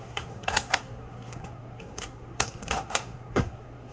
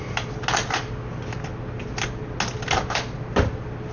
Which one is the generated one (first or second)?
first